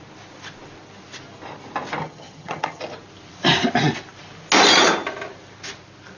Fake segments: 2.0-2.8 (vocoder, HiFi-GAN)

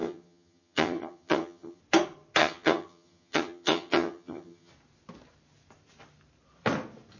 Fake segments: 0.0-1.8 (vocoder, HiFi-GAN); 2.4-4.7

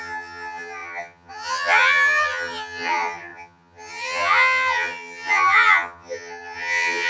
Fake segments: 0.0-7.1 (vocoder, HiFi-GAN)

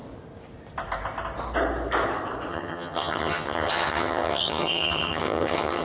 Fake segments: 2.5-5.8 (vocoder, HiFi-GAN)

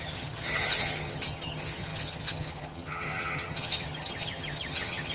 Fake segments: 0.0-5.1 (vocoder, HiFi-GAN)

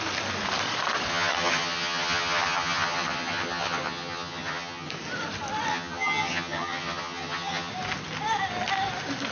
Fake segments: 1.1-4.9 (vocoder, HiFi-GAN); 5.7-7.7